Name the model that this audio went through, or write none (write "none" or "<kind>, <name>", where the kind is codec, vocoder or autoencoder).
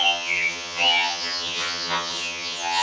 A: vocoder, HiFi-GAN